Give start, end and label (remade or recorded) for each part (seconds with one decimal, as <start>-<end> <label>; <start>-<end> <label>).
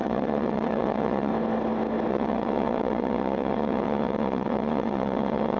0.0-1.3 remade; 1.3-2.1 recorded; 2.1-5.6 remade